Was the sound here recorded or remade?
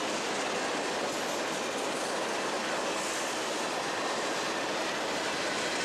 recorded